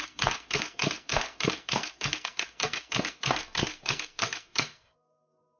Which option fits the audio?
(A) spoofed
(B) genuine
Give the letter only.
A